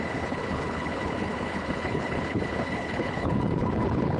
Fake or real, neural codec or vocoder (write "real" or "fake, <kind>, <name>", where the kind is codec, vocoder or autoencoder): fake, codec, HILCodec